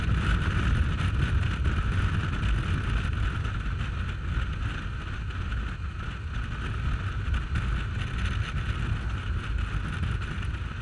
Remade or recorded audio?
recorded